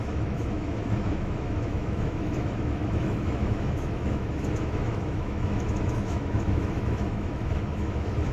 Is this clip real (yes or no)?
no